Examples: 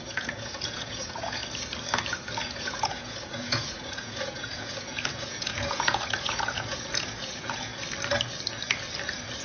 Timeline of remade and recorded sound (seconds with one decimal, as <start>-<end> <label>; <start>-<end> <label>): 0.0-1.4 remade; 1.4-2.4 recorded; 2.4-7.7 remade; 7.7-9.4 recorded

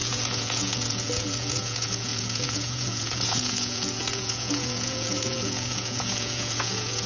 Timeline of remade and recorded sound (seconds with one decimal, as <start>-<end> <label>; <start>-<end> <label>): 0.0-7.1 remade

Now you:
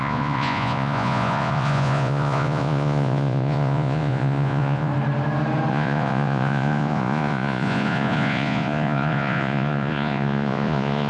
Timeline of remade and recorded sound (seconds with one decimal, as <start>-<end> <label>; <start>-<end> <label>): 0.0-4.9 remade; 4.9-5.7 recorded; 5.7-11.1 remade

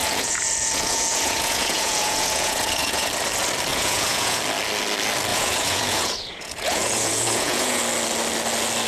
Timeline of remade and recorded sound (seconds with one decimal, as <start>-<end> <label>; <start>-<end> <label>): 0.0-3.1 remade; 3.1-3.7 recorded; 3.7-4.4 remade; 4.4-5.3 recorded; 5.3-7.8 remade; 7.8-8.9 recorded